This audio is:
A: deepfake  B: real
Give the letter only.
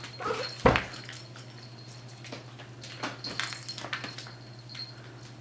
B